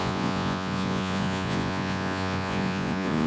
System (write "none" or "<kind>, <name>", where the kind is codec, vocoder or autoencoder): vocoder, Vocos